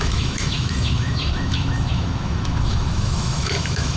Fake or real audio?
fake